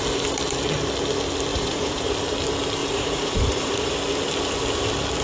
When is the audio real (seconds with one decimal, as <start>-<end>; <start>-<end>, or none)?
0.0-1.5; 2.1-2.8; 3.9-5.2